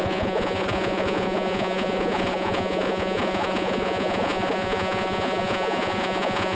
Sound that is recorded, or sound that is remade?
remade